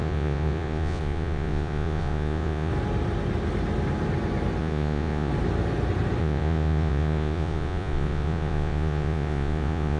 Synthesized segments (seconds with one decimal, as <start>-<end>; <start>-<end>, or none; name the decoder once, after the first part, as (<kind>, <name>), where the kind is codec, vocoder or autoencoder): 0.0-2.7 (vocoder, Vocos); 4.6-5.3; 6.2-10.0